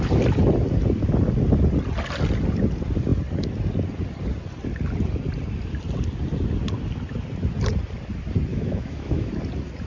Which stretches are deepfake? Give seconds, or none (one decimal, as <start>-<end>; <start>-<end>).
8.5-9.3